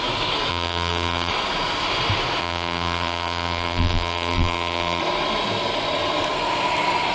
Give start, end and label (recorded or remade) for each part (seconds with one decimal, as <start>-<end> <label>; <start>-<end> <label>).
0.0-0.5 recorded; 0.5-1.3 remade; 1.3-2.4 recorded; 2.4-5.0 remade; 5.0-7.1 recorded